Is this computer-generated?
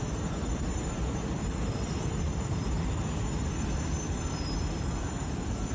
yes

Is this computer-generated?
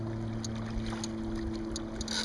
no